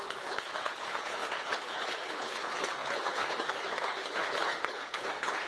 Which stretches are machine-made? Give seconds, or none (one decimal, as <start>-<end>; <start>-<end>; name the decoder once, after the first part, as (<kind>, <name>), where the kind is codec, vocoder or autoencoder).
0.0-5.5 (codec, HILCodec)